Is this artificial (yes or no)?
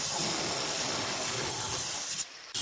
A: no